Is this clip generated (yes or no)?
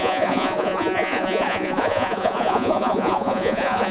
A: yes